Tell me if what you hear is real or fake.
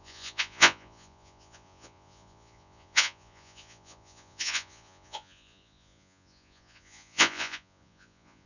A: fake